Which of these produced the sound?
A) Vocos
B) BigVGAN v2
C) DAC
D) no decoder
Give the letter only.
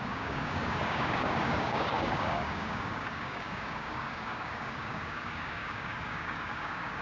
C